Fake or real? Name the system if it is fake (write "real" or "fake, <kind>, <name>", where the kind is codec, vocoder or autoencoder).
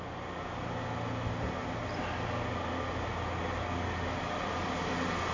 real